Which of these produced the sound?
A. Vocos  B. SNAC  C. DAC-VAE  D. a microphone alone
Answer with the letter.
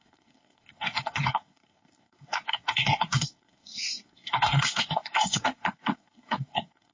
B